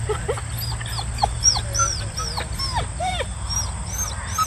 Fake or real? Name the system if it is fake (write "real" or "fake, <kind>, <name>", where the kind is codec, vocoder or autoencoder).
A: real